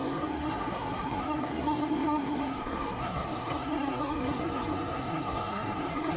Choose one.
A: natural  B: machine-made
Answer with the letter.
B